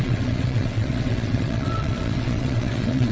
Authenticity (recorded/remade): remade